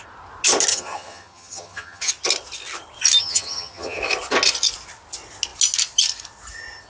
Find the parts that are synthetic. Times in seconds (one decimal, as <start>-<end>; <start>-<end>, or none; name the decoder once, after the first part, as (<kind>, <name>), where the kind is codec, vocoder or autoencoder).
0.7-2.1 (vocoder, HiFi-GAN); 3.2-4.0